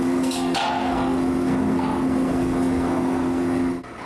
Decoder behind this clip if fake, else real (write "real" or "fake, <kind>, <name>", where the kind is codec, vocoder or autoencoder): fake, codec, SNAC